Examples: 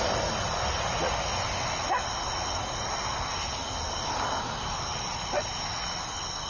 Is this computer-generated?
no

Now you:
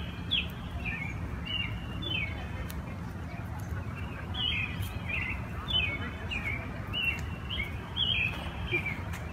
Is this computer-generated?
no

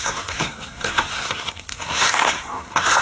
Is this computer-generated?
yes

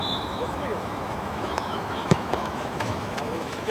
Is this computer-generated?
yes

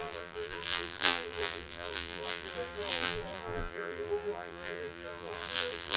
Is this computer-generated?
yes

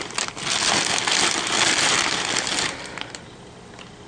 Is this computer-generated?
no